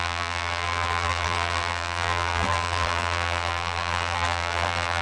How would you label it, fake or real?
fake